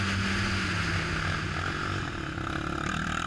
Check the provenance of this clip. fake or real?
real